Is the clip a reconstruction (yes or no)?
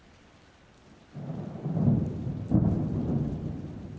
yes